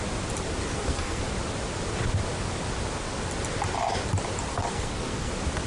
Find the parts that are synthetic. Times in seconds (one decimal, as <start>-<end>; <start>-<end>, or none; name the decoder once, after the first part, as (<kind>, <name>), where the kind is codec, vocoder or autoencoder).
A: 0.6-1.2 (codec, SNAC); 4.5-5.3